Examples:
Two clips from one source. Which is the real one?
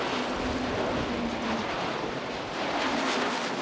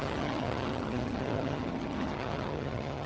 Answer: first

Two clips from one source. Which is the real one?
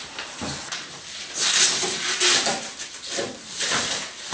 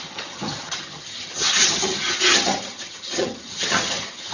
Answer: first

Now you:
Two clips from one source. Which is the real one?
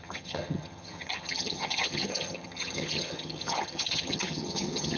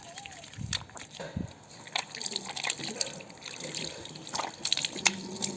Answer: second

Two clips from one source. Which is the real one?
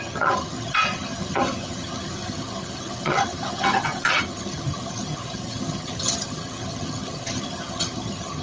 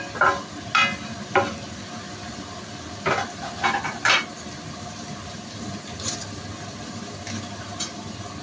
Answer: second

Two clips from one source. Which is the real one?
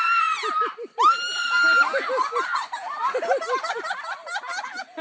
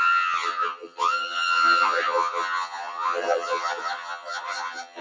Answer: first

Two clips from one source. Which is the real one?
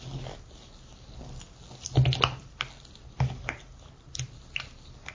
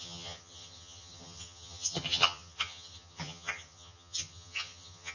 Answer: first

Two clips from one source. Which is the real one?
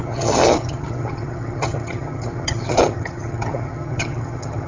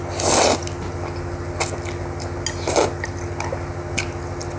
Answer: second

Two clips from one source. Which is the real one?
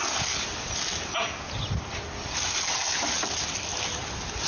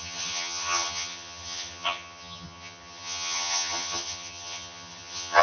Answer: first